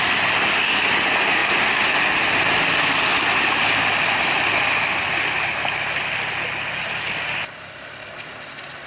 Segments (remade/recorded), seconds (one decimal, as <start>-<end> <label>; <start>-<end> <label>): 0.0-8.9 recorded